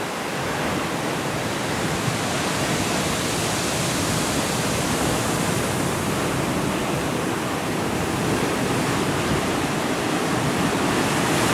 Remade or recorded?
remade